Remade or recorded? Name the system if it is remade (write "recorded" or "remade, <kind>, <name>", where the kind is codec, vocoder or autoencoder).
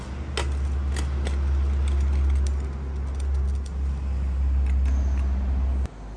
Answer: recorded